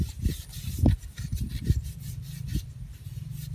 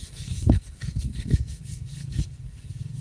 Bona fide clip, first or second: first